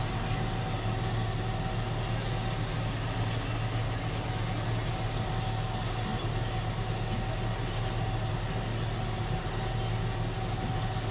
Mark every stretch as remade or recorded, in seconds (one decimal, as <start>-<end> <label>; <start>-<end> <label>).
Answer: 0.0-11.1 recorded